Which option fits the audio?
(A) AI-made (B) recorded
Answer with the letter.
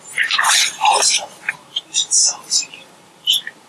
A